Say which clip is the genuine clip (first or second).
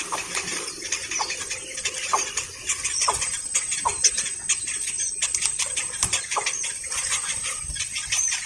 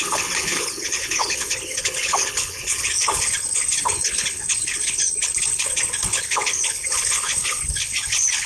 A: first